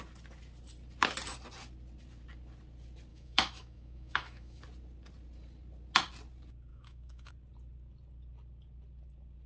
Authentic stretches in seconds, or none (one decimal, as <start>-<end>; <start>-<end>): 0.0-3.1; 4.6-6.7; 7.3-9.5